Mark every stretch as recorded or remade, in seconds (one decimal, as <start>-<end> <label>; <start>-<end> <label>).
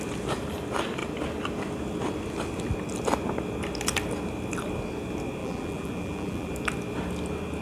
0.0-5.4 recorded; 5.4-6.5 remade; 6.5-7.6 recorded